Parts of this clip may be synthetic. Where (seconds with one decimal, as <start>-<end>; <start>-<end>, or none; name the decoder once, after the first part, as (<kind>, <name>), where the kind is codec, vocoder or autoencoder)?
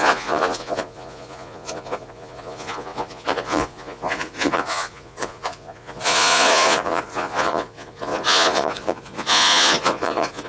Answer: 0.0-10.5 (vocoder, Vocos)